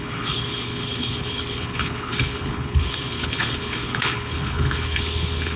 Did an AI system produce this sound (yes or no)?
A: yes